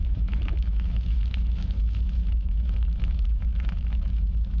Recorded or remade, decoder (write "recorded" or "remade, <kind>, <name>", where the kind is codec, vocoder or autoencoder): remade, autoencoder, DAC-VAE